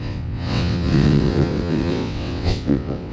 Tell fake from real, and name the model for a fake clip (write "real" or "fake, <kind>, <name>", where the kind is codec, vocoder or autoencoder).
fake, vocoder, WaveNeXt